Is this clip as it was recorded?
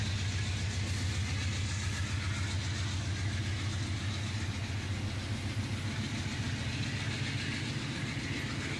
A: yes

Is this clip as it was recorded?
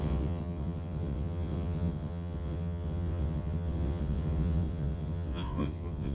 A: no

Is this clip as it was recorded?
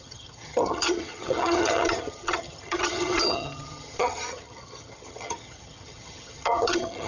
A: no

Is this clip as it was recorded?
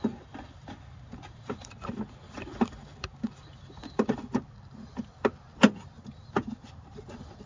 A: yes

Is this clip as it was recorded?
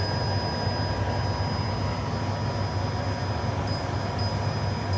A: yes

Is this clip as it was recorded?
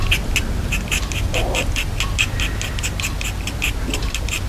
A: yes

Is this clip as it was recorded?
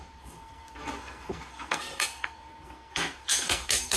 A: no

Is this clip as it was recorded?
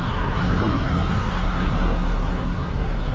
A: no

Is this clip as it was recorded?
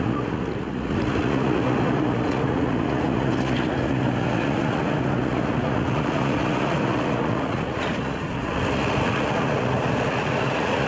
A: no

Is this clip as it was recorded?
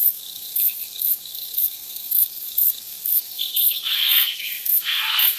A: no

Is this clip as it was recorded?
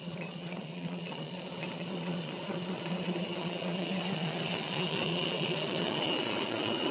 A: no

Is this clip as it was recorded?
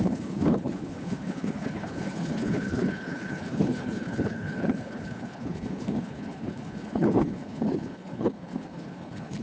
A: no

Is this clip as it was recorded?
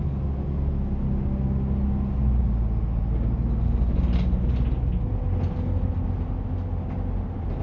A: yes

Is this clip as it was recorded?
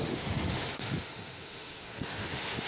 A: no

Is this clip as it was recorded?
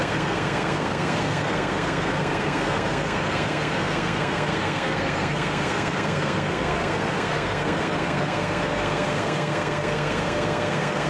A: no